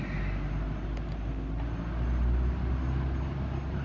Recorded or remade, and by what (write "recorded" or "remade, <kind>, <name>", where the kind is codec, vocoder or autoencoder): recorded